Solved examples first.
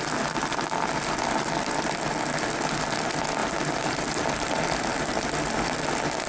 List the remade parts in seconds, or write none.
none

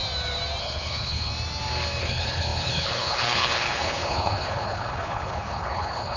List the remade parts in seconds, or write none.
0.6-1.3 (codec, HILCodec); 2.0-6.2

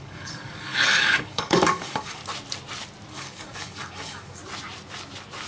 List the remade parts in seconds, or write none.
0.0-2.2 (codec, DAC); 3.1-4.4

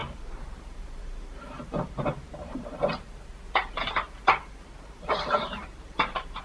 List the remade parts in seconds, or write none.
0.0-2.9 (vocoder, BigVGAN v2); 3.6-6.4

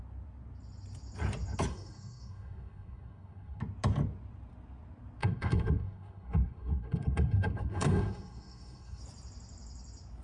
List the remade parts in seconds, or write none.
1.7-3.6 (codec, SNAC); 5.2-9.0

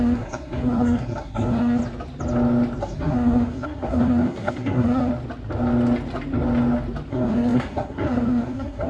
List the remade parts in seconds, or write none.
0.0-1.8 (codec, SNAC); 2.8-5.1; 7.1-8.9